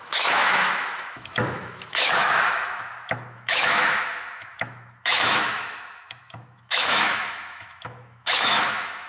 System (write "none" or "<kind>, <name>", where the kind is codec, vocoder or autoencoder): autoencoder, DAC-VAE